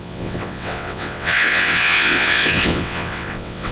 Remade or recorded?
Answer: remade